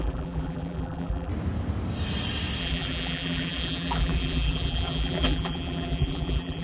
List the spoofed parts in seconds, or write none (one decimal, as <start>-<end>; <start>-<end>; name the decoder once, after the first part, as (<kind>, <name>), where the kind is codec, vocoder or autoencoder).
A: 0.0-1.3 (vocoder, BigVGAN v2); 2.6-6.6